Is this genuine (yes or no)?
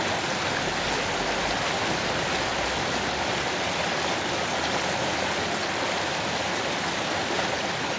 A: yes